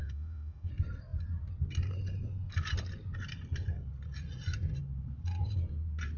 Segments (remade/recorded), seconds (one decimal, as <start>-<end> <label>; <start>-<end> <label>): 0.0-0.7 remade; 0.7-6.2 recorded